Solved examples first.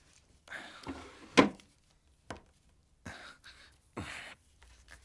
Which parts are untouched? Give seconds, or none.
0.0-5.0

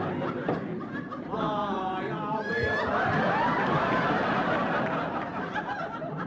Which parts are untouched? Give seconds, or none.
0.0-2.5; 3.3-5.3

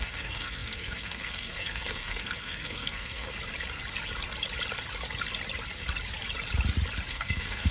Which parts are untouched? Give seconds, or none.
3.3-7.1

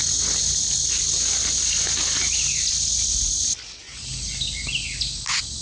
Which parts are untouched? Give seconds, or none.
0.0-5.6

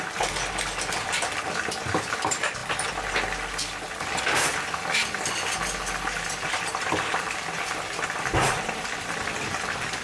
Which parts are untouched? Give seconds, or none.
0.0-10.0

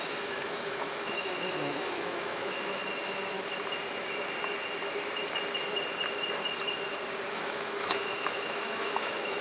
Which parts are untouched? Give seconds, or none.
2.8-7.3

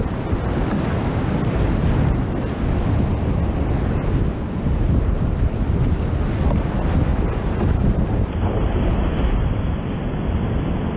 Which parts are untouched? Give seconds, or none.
0.0-7.1; 8.7-11.0

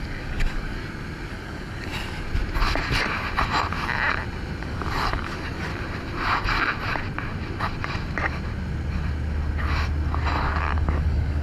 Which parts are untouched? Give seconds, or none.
0.8-1.3; 1.9-4.6; 5.7-10.4